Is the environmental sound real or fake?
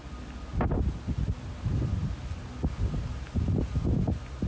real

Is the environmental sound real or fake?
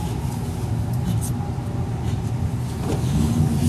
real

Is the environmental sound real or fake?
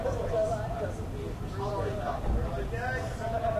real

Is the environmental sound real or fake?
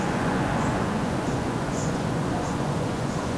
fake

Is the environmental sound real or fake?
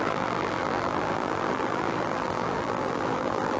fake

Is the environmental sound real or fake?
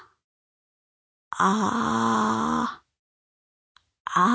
real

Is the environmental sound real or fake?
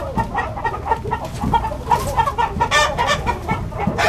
real